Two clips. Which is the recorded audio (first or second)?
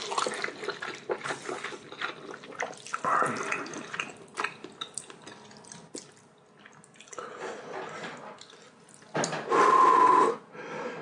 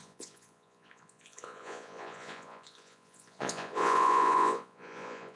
first